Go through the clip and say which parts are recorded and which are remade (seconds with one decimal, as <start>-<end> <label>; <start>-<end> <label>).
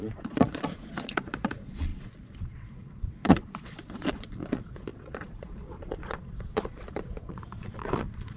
0.0-8.4 remade